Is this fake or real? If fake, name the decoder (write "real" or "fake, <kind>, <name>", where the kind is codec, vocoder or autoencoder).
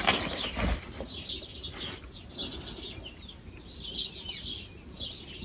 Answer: real